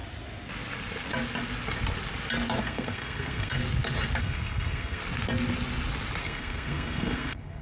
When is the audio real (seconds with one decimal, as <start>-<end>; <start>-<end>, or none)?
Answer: 0.0-2.6; 3.6-4.2; 5.0-6.2